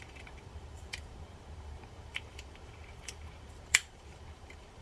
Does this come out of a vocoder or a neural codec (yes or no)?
yes